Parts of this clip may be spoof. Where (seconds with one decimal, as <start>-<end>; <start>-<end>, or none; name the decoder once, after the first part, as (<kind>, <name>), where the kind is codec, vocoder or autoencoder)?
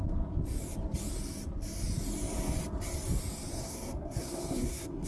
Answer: 3.6-5.1 (codec, SNAC)